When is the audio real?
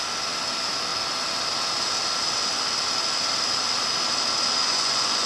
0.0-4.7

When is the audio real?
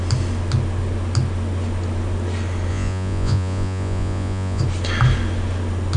0.0-2.7; 4.6-6.0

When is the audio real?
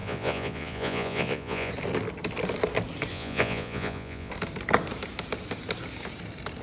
1.7-3.1; 4.3-6.6